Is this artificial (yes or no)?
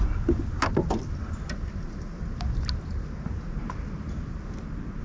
no